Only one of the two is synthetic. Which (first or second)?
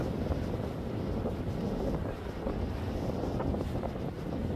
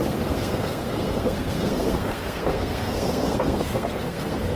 second